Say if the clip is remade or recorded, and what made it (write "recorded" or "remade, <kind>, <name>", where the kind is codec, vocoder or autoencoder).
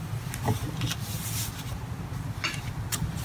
recorded